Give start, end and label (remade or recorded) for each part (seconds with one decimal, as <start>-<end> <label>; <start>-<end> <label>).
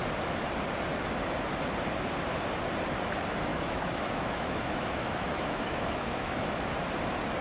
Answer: 0.0-3.5 recorded; 3.5-6.6 remade; 6.6-7.4 recorded